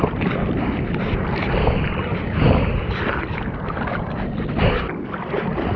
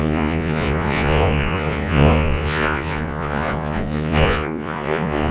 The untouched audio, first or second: first